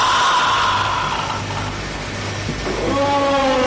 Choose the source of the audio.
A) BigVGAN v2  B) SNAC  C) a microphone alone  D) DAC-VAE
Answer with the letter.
C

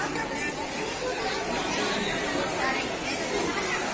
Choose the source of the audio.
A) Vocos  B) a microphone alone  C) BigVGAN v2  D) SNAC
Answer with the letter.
B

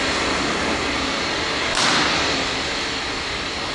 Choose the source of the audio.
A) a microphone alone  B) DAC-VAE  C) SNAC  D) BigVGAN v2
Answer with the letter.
A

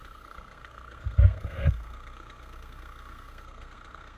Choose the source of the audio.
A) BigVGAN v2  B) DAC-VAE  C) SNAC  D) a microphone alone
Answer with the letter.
C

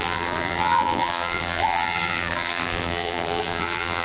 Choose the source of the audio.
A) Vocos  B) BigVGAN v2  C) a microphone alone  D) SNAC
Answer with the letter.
B